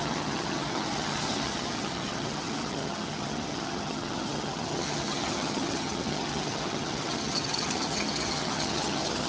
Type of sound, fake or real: fake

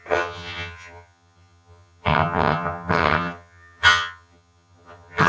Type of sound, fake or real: fake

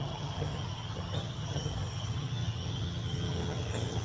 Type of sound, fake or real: fake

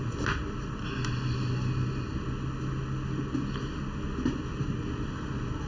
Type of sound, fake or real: real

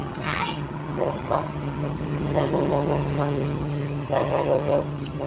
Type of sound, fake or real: fake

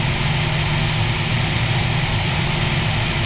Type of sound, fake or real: real